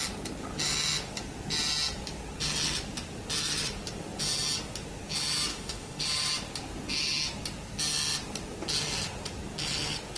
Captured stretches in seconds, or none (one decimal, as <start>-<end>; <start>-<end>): 0.0-5.5; 6.0-10.2